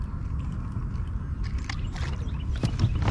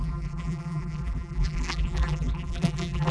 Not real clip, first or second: second